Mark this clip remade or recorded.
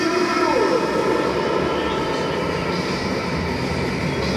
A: recorded